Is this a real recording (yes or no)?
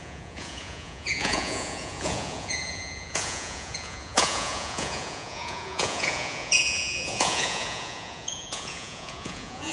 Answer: no